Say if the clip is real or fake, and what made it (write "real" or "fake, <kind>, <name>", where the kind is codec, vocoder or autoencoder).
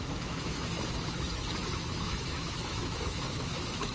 fake, autoencoder, DAC-VAE